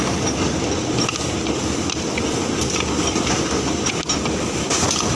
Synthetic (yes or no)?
no